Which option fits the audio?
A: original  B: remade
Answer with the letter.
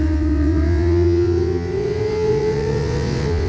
B